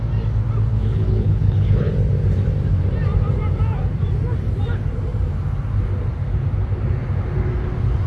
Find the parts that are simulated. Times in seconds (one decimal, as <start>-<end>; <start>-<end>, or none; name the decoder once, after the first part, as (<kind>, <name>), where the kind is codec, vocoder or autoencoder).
0.7-1.9 (codec, HILCodec)